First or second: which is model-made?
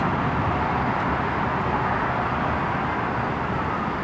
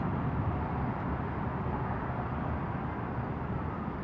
second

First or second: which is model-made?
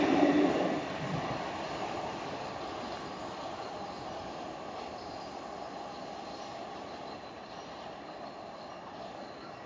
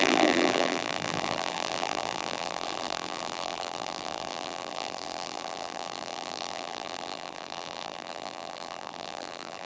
second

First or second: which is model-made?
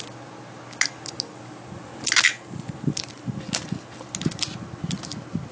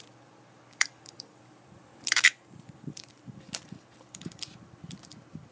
second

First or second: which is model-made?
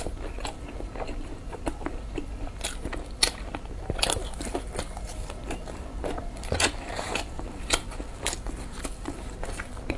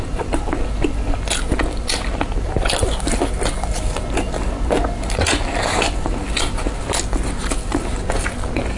first